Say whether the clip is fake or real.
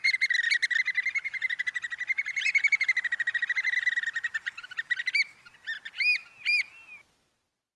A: real